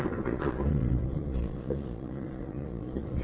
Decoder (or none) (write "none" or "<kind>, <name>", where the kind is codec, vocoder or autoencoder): vocoder, Vocos